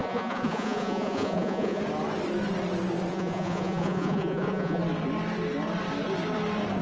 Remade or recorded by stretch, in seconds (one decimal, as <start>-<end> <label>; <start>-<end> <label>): 0.0-1.8 remade; 1.8-3.1 recorded; 3.1-4.8 remade; 4.8-6.8 recorded